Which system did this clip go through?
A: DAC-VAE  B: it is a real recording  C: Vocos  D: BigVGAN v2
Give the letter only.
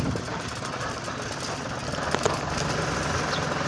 B